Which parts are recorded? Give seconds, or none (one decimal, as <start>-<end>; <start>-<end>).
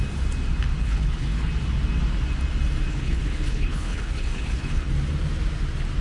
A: 0.0-0.8; 1.5-2.9; 4.9-6.0